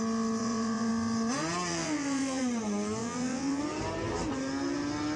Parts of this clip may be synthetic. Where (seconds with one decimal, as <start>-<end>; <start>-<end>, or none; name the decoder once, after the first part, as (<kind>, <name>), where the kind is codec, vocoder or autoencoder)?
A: 0.4-0.9 (vocoder, WaveNeXt); 1.7-2.4; 3.0-3.6